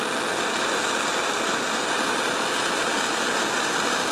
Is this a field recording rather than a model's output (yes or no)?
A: yes